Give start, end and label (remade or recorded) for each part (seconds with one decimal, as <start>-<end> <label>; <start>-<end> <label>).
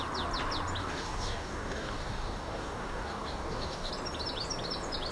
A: 0.0-0.8 recorded; 0.8-3.9 remade; 3.9-5.1 recorded